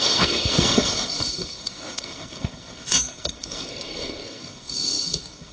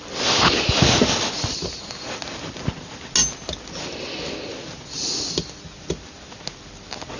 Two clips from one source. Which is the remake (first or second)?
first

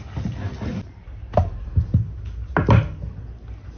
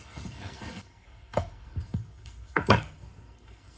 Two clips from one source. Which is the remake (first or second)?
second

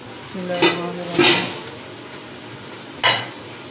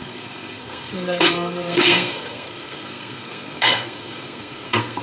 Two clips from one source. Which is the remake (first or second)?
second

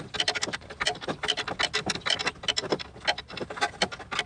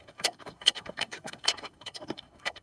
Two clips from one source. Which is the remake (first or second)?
second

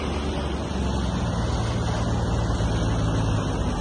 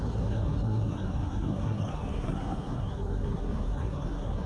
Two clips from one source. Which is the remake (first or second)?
second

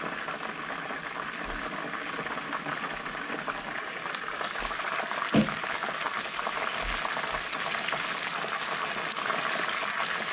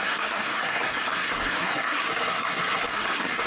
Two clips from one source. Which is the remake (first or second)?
second